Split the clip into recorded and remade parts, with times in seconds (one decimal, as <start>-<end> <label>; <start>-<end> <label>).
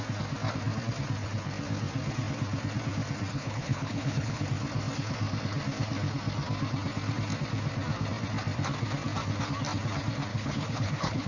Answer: 0.0-3.3 recorded; 3.3-4.4 remade; 4.4-10.3 recorded; 10.3-11.3 remade